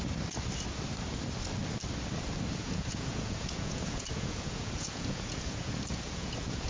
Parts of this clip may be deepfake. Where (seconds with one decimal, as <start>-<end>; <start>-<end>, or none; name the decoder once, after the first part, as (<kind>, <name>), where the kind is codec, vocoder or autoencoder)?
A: 2.5-6.7 (vocoder, Vocos)

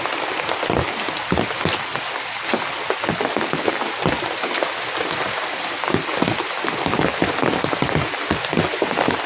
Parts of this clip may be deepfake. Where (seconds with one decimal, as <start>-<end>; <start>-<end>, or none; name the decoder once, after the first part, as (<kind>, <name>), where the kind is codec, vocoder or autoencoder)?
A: none

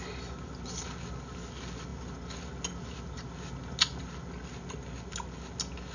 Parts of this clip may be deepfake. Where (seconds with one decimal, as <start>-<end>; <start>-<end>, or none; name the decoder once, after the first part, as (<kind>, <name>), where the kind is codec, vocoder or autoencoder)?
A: none

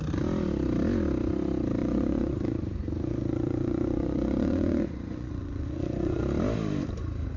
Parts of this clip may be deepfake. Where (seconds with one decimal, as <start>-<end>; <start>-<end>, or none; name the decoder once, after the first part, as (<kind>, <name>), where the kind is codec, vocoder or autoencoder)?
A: 1.8-6.2 (vocoder, Vocos)

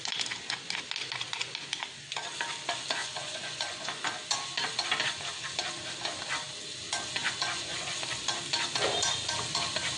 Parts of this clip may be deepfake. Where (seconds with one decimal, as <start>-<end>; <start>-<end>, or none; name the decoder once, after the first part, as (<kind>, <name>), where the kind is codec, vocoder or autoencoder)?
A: 3.0-4.0 (vocoder, Vocos); 7.2-8.0

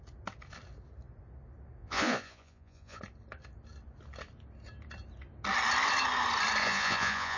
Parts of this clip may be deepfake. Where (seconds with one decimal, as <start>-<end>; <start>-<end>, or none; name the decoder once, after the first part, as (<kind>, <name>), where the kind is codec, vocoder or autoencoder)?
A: 1.8-3.0 (vocoder, Vocos); 6.6-7.4